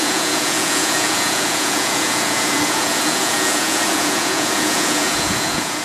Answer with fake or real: fake